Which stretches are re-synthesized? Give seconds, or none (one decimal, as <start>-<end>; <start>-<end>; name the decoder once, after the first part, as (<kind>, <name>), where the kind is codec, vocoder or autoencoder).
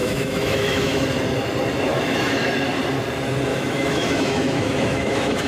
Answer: 0.0-1.1 (autoencoder, DAC-VAE); 1.9-2.5; 3.5-5.5